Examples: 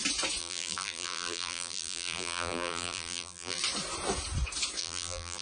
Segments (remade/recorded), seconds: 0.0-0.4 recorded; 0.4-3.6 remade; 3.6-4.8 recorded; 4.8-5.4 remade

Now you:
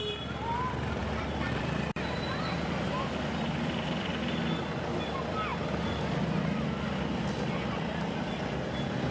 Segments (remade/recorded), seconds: 0.0-1.0 recorded; 1.0-4.4 remade; 4.4-9.1 recorded

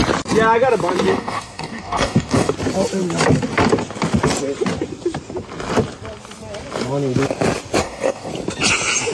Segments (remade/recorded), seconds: 0.0-1.1 recorded; 1.1-2.5 remade; 2.5-7.8 recorded; 7.8-8.3 remade; 8.3-9.1 recorded

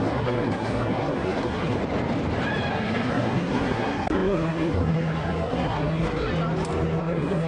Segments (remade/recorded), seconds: 0.0-1.8 remade; 1.8-2.7 recorded; 2.7-6.3 remade; 6.3-7.0 recorded; 7.0-7.5 remade

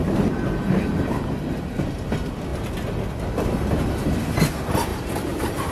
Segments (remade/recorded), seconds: 0.0-0.6 recorded; 0.6-1.2 remade; 1.2-4.9 recorded; 4.9-5.7 remade

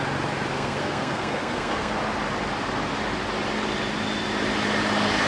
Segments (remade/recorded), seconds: 0.0-0.5 recorded; 0.5-2.0 remade; 2.0-5.3 recorded

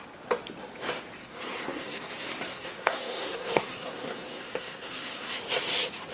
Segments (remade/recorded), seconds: 0.0-1.2 recorded; 1.2-2.1 remade; 2.1-2.5 recorded; 2.5-5.4 remade; 5.4-6.1 recorded

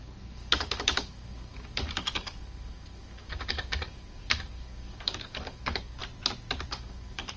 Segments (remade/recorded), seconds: 0.0-6.0 remade; 6.0-6.7 recorded; 6.7-7.4 remade